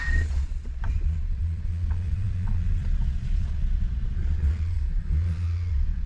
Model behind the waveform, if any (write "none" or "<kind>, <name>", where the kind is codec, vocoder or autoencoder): vocoder, Vocos